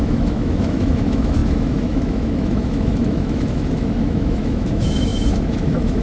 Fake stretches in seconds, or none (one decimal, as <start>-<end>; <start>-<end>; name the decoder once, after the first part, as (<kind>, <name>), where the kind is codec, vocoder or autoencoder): 0.0-6.0 (autoencoder, DAC-VAE)